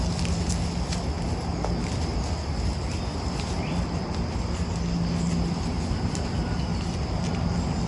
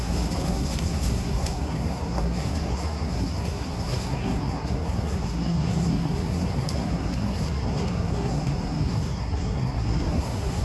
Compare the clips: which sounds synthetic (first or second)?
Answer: second